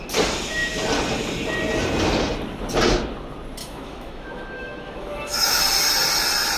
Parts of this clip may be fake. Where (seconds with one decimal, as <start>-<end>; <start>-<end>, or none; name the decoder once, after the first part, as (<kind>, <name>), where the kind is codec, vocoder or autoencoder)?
3.6-5.6 (autoencoder, DAC-VAE)